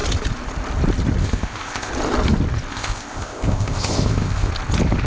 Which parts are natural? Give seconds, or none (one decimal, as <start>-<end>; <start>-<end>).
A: 0.0-1.2; 1.9-2.7; 4.5-5.1